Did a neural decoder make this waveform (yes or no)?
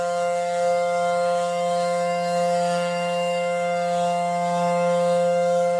yes